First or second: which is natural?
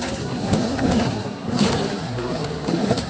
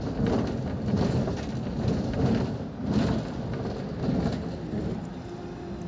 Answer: second